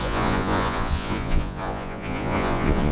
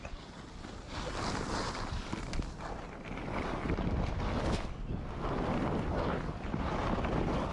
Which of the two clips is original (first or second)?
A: second